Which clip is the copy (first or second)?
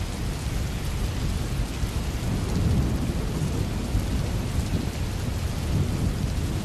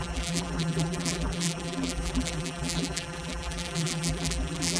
second